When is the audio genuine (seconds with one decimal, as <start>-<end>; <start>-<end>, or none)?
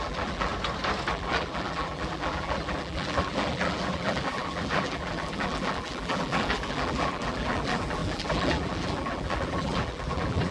0.5-1.1